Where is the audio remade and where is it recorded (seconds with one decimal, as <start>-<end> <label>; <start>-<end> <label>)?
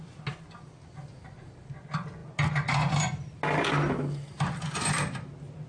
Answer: 0.0-5.7 recorded